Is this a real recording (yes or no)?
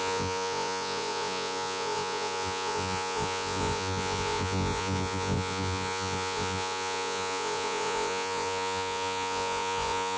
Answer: no